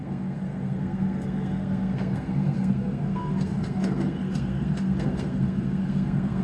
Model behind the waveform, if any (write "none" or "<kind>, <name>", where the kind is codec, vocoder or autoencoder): codec, SNAC